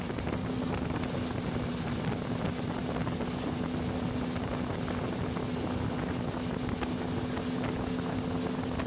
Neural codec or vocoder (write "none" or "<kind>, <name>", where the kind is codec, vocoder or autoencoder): none